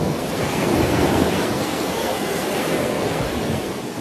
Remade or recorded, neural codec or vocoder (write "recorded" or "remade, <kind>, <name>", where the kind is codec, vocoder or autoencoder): remade, codec, SNAC